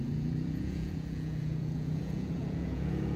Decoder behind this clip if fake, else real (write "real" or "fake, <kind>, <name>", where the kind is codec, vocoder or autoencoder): fake, vocoder, Vocos